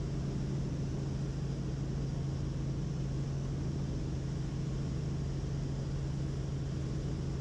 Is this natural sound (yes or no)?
yes